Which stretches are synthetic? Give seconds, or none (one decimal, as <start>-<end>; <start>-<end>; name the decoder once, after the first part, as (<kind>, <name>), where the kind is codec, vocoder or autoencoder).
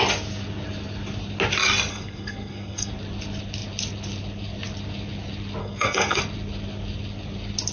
1.9-2.9 (codec, SNAC); 5.6-6.2